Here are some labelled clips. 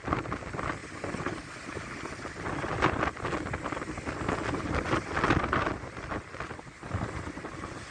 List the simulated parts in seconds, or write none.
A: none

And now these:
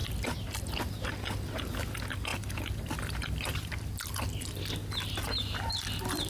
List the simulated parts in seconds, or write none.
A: 0.0-0.7 (vocoder, BigVGAN v2); 2.3-4.6

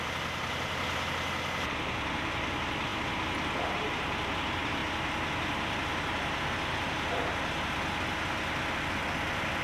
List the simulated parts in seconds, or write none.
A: 0.0-4.8 (vocoder, BigVGAN v2); 8.9-9.6

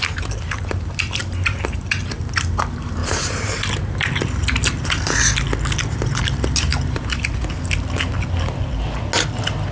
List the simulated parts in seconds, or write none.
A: 1.2-2.2 (vocoder, BigVGAN v2); 3.0-3.6; 6.7-7.3

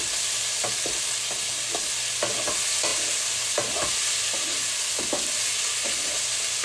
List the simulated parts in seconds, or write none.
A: none